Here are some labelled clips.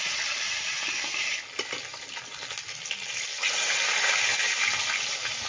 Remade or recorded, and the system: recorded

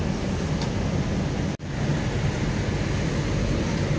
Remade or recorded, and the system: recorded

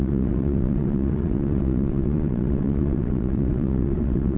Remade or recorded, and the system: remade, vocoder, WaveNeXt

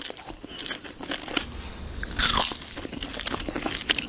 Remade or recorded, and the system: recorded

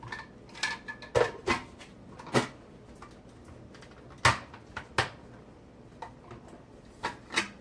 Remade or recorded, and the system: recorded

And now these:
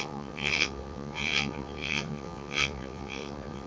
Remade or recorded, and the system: remade, vocoder, WaveNeXt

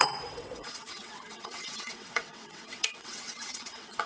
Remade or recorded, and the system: remade, vocoder, WaveNeXt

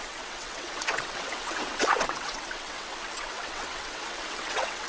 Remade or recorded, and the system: remade, vocoder, WaveNeXt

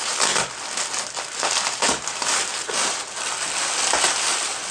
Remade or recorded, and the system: recorded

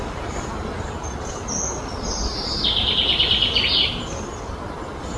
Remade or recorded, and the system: recorded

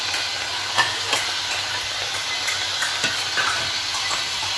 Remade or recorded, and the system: recorded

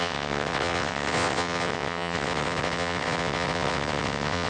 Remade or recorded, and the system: remade, vocoder, WaveNeXt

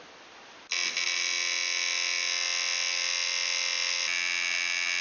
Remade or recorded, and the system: recorded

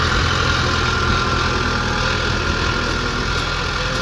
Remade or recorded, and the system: recorded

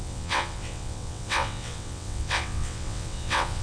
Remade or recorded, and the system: remade, vocoder, WaveNeXt